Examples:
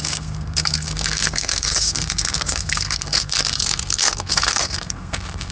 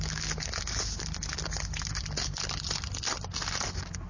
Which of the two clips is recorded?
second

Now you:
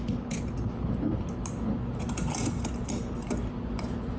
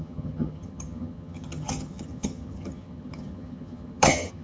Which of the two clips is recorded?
first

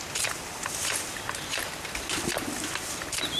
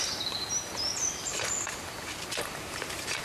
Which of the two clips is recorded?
first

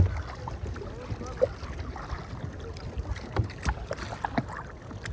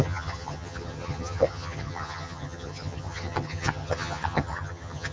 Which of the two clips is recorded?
first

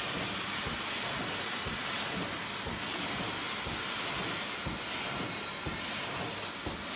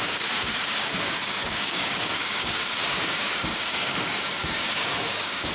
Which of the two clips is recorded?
first